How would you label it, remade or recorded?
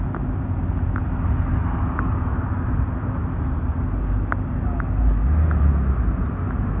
recorded